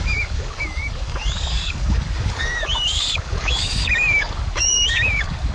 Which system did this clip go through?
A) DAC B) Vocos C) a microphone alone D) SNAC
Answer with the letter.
A